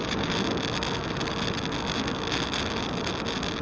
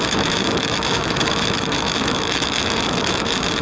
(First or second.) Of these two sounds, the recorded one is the first